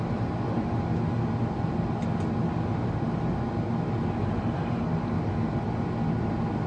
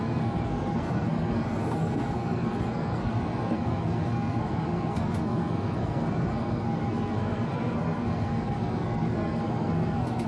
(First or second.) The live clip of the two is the first